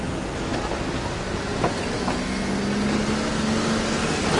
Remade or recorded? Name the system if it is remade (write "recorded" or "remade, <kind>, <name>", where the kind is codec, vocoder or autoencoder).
recorded